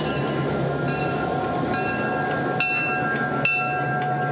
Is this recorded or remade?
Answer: recorded